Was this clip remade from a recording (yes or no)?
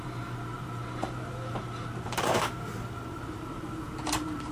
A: yes